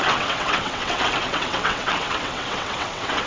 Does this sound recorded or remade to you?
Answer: remade